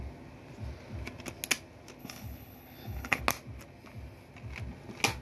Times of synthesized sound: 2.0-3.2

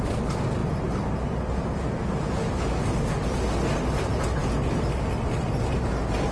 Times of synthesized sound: none

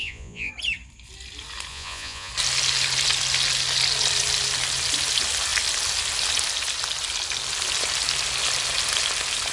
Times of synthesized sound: 0.0-0.5; 1.7-2.3

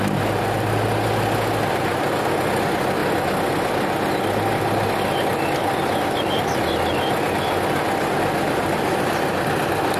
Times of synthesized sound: none

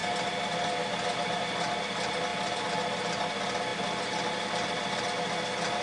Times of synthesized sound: none

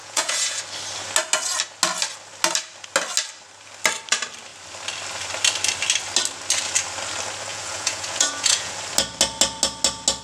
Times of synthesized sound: 0.0-0.6; 7.5-8.7

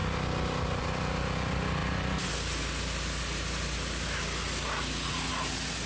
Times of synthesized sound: none

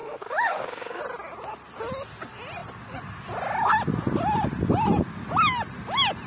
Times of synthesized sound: 0.0-1.0